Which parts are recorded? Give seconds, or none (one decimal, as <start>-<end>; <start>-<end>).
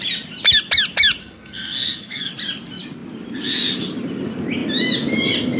0.0-1.2; 2.3-5.6